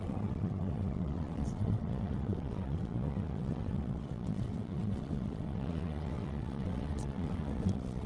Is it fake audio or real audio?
fake